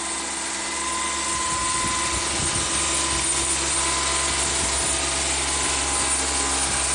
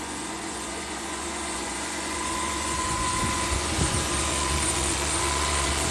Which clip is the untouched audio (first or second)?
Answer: first